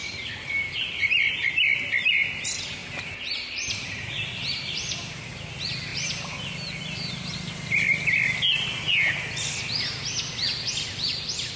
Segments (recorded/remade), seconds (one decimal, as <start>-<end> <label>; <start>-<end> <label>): 0.0-2.3 remade; 2.3-2.8 recorded; 2.8-5.3 remade; 5.3-11.6 recorded